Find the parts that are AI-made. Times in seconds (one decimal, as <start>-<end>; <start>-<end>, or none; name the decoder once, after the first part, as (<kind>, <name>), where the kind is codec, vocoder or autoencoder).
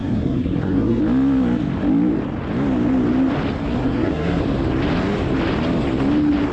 0.0-1.0 (codec, SNAC); 3.8-4.4